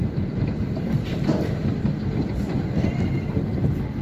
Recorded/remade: remade